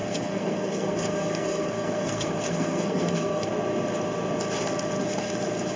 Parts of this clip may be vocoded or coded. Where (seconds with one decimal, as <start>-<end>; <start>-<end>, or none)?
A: 0.0-3.5